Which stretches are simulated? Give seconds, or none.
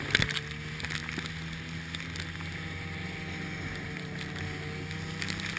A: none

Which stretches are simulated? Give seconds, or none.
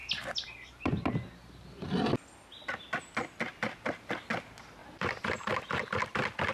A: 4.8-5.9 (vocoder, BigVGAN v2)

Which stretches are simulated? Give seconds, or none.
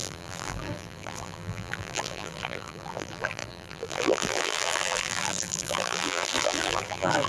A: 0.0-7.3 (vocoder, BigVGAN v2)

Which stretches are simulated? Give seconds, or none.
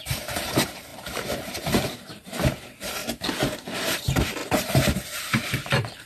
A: 0.0-3.0 (vocoder, BigVGAN v2); 3.7-6.1